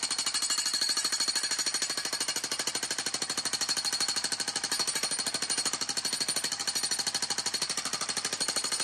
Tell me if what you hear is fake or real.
real